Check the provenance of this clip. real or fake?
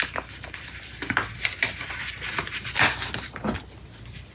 real